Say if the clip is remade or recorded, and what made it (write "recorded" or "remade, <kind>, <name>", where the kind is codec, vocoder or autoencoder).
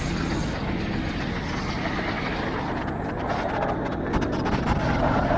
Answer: recorded